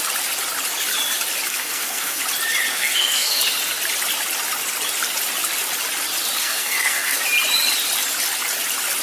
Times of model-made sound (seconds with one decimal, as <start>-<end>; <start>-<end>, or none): 1.5-2.2; 2.7-3.4; 6.4-7.2